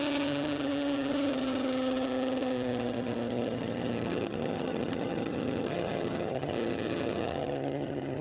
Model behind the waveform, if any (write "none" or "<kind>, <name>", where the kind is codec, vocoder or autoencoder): vocoder, HiFi-GAN